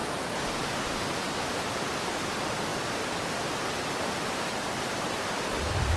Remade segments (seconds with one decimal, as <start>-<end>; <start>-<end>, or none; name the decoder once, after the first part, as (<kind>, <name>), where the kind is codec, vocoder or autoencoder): 0.0-0.8 (vocoder, BigVGAN v2); 2.7-6.0